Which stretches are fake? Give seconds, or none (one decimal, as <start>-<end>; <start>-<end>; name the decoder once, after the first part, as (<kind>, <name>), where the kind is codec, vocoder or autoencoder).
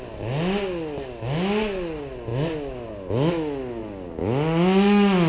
none